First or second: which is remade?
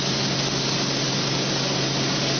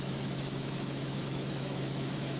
second